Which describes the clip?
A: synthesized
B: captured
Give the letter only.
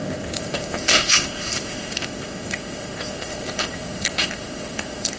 A